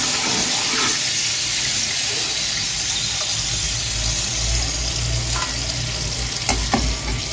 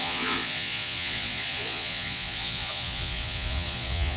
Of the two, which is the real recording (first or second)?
first